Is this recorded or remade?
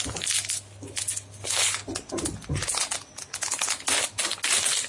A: recorded